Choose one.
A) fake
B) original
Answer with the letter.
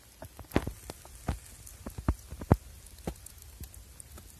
B